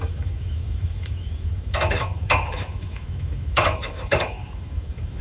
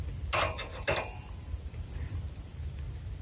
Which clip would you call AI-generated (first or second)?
first